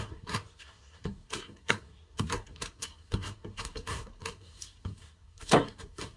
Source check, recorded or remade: remade